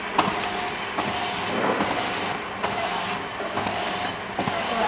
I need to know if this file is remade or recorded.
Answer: recorded